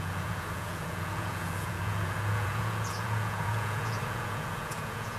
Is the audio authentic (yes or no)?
no